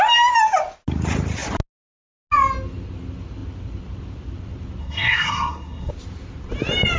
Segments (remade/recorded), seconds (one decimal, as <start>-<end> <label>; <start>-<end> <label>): 0.0-4.8 recorded; 4.8-5.9 remade; 5.9-7.0 recorded

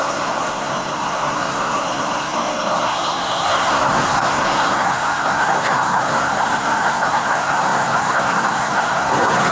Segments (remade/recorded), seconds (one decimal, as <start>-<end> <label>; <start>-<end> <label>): 0.0-9.5 remade

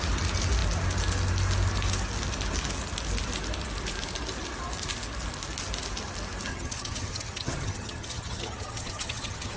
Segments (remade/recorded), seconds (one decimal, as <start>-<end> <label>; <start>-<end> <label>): 0.0-6.5 recorded; 6.5-9.6 remade

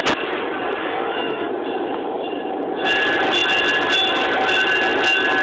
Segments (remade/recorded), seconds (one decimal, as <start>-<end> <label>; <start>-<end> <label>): 0.0-0.8 recorded; 0.8-1.5 remade; 1.5-5.4 recorded

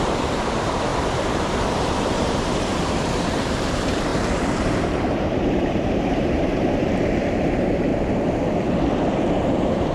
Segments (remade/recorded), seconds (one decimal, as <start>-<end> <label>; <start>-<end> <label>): 0.0-0.9 remade; 0.9-1.7 recorded; 1.7-7.9 remade; 7.9-9.2 recorded; 9.2-9.9 remade

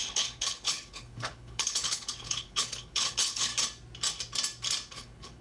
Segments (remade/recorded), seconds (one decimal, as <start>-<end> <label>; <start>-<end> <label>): 0.0-3.5 remade; 3.5-4.9 recorded; 4.9-5.4 remade

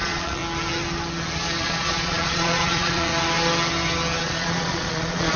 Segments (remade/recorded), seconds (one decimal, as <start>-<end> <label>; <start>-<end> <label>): 0.0-0.4 remade; 0.4-1.6 recorded; 1.6-3.1 remade; 3.1-4.2 recorded; 4.2-5.4 remade

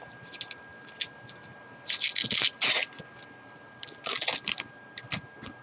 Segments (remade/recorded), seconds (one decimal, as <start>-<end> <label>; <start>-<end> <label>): 0.0-5.6 recorded